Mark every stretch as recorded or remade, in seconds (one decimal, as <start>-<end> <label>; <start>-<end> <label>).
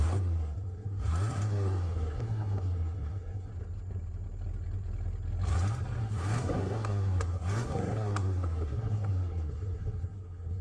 0.0-3.5 remade; 3.5-6.0 recorded; 6.0-10.6 remade